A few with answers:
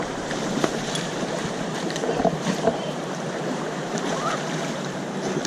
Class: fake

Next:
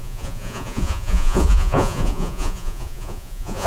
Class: fake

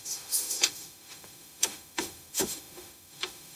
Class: fake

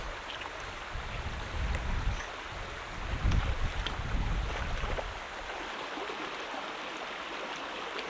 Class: real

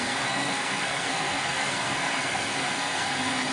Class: fake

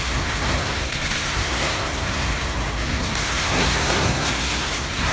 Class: fake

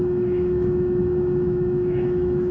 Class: fake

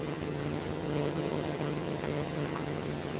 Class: fake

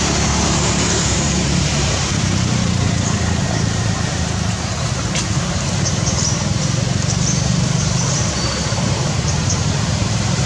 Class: fake